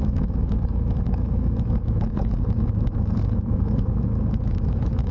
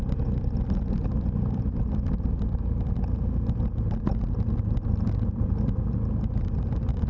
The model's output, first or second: first